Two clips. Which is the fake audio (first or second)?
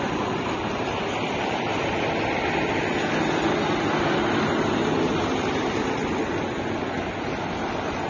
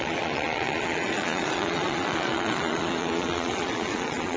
second